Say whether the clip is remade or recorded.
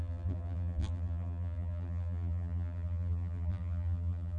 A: remade